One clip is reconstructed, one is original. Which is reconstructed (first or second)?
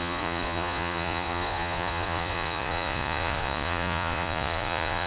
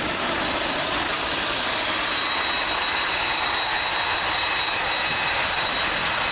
first